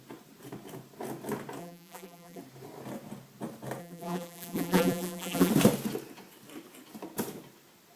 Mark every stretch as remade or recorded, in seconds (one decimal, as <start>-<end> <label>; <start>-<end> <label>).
0.0-1.6 recorded; 1.6-2.4 remade; 2.4-3.8 recorded; 3.8-5.5 remade; 5.5-8.0 recorded